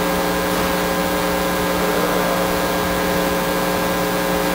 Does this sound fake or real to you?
real